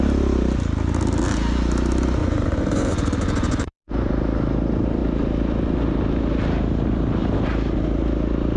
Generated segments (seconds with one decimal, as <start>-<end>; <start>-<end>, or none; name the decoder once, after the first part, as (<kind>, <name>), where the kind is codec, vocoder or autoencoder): 2.2-4.1 (vocoder, Vocos)